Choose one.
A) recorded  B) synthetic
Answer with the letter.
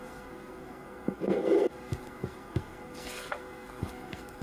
B